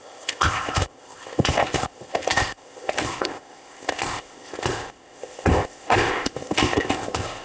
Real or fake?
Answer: fake